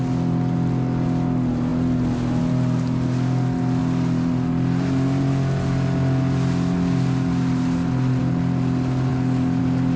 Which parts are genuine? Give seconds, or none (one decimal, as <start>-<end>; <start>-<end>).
0.0-10.0

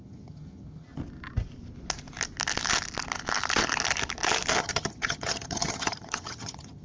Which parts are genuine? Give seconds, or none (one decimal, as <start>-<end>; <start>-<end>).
1.0-4.6

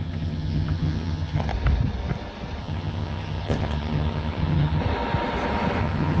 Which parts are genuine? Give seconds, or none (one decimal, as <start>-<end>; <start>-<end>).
1.5-2.6; 4.8-5.8

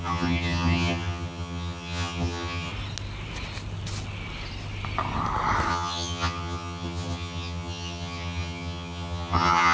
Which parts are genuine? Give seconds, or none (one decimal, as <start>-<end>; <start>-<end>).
2.7-5.7

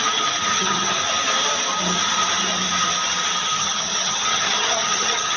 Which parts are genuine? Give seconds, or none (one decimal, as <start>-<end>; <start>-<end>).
0.0-0.5; 1.0-3.4

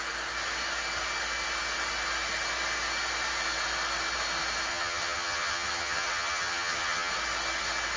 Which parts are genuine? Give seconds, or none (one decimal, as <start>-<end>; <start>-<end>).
0.0-4.7; 7.1-8.0

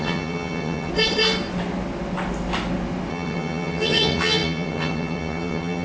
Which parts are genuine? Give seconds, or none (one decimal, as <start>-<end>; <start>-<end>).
0.9-3.1